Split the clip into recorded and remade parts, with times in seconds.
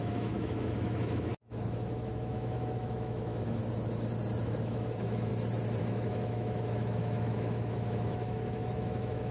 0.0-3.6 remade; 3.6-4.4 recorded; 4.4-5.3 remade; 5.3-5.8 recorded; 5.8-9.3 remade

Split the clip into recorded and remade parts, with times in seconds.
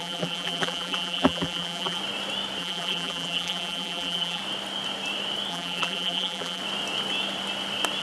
0.0-2.0 remade; 2.0-2.6 recorded; 2.6-4.4 remade; 4.4-5.5 recorded; 5.5-6.6 remade; 6.6-8.0 recorded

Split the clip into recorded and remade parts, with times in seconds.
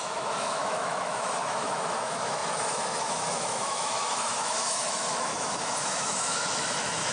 0.0-7.1 remade